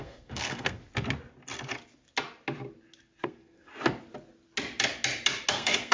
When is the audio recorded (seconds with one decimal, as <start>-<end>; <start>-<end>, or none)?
0.8-3.2; 3.7-5.5